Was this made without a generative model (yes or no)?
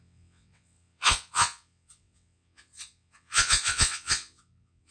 no